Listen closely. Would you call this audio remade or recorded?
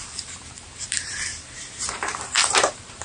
remade